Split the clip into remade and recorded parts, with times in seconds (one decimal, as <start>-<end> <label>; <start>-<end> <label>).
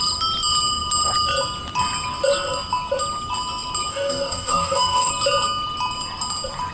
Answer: 0.0-3.9 recorded; 3.9-5.1 remade; 5.1-6.7 recorded